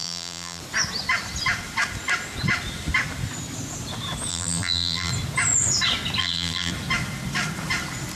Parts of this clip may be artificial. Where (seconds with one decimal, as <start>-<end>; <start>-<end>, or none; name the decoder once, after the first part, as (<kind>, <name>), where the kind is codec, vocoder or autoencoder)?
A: 0.0-0.6 (vocoder, BigVGAN v2); 4.3-5.1; 6.2-6.7